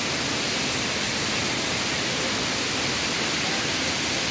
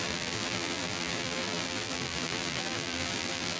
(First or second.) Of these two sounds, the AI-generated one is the second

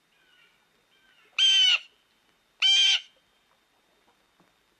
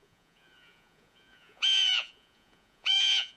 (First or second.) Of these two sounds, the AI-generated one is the second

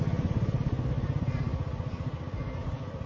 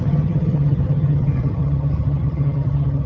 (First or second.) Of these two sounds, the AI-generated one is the second